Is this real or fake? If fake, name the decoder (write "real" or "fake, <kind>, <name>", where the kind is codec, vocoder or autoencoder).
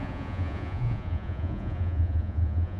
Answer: fake, vocoder, Vocos